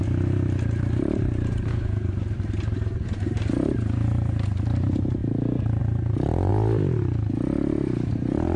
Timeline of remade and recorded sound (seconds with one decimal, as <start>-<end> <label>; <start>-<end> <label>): 0.0-5.2 remade; 5.2-5.8 recorded; 5.8-6.5 remade; 6.5-8.1 recorded; 8.1-8.6 remade